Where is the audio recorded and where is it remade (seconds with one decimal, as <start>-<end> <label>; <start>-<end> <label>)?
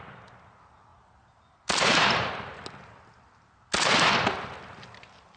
0.0-5.4 recorded